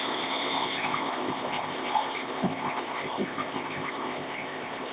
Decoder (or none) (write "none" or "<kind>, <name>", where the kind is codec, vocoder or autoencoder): codec, ZipCodec